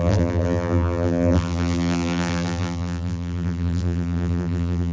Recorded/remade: remade